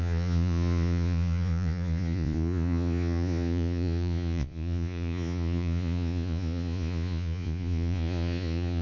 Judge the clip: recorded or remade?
remade